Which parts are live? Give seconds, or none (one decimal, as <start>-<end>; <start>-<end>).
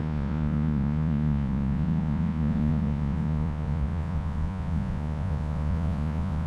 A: none